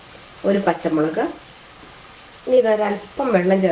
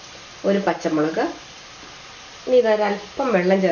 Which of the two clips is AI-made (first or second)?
first